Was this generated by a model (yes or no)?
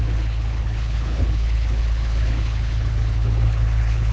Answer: yes